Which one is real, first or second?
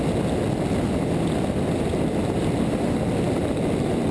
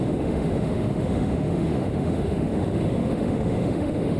first